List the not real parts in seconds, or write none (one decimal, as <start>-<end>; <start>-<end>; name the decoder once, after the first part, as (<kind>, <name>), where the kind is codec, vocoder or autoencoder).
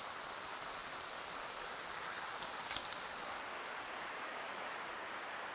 0.8-2.3 (vocoder, BigVGAN v2); 2.8-3.6